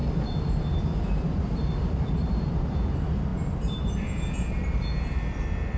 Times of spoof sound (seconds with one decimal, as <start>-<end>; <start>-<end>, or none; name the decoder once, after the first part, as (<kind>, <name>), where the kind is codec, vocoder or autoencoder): 1.2-5.8 (vocoder, BigVGAN v2)